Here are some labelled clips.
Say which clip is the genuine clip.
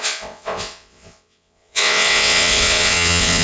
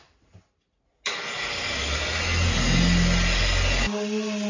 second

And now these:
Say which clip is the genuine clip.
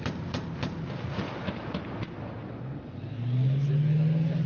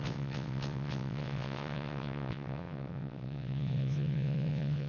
first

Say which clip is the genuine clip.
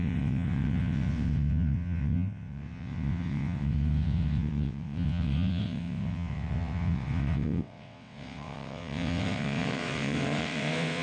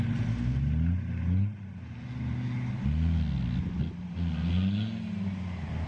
second